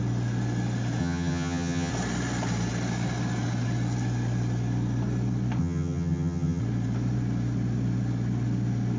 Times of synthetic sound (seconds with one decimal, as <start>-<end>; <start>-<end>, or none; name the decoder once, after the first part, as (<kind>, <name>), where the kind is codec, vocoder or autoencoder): 1.0-1.9 (vocoder, HiFi-GAN); 5.6-6.6